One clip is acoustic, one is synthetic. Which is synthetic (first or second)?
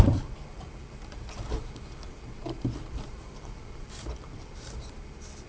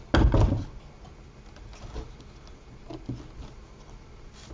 first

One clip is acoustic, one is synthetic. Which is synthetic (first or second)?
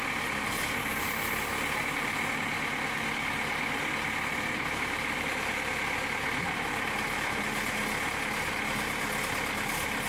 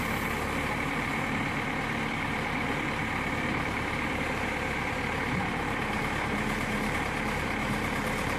second